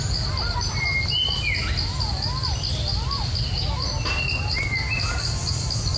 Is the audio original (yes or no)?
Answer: yes